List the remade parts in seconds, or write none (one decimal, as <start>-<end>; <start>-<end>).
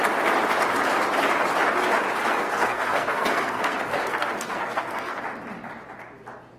2.2-5.2